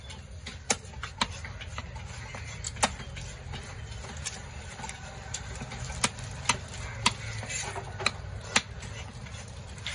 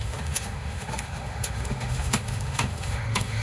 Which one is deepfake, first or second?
second